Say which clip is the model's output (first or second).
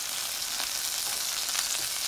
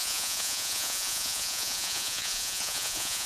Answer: second